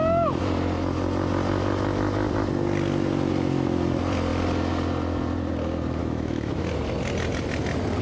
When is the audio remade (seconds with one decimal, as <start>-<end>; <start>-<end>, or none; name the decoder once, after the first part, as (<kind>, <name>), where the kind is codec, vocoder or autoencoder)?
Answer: 6.0-6.6 (autoencoder, DAC-VAE)